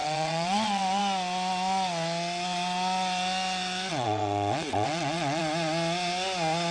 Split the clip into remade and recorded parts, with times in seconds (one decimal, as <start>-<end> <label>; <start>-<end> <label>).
0.0-1.0 remade; 1.0-3.9 recorded; 3.9-5.4 remade; 5.4-6.7 recorded